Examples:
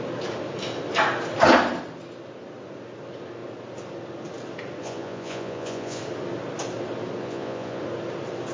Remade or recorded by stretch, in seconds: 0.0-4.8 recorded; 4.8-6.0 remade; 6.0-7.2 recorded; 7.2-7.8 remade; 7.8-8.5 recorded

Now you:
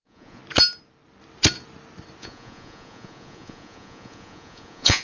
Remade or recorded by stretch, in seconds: 0.0-0.4 remade; 0.4-2.2 recorded; 2.2-5.0 remade

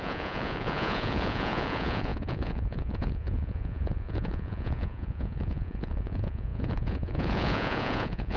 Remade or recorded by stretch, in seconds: 0.0-8.4 remade

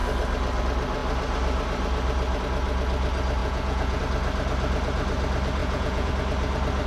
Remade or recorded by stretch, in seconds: 0.0-3.4 recorded; 3.4-4.0 remade; 4.0-5.6 recorded; 5.6-6.1 remade; 6.1-6.9 recorded

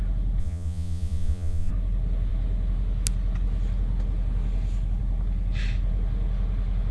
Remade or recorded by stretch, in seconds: 0.0-0.4 recorded; 0.4-1.7 remade; 1.7-6.9 recorded